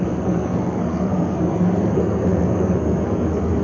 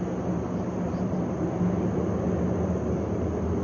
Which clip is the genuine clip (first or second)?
second